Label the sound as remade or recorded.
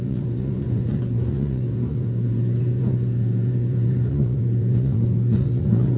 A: remade